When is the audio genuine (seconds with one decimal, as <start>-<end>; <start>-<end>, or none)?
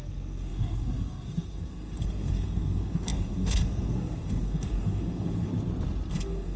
5.5-6.1